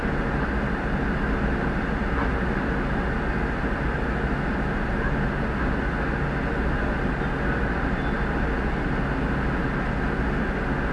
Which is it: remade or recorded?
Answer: recorded